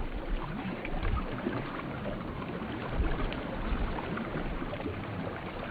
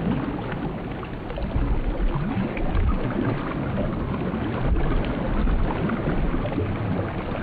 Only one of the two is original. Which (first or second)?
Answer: second